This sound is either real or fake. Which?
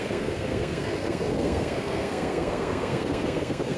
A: fake